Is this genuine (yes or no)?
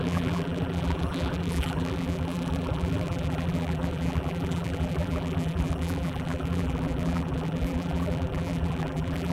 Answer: no